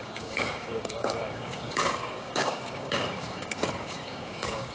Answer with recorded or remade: remade